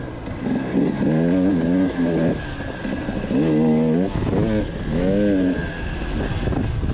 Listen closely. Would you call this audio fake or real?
real